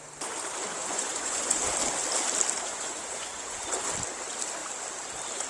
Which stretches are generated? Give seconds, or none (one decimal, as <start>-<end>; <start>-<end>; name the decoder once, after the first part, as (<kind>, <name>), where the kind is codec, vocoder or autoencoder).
0.8-1.6 (vocoder, Vocos); 2.7-3.9